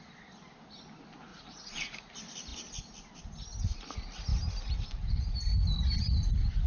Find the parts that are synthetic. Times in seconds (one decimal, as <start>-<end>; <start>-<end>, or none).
1.3-2.1